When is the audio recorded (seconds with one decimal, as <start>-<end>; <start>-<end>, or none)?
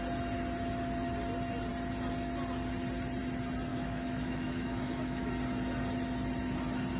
0.0-3.7; 5.3-7.0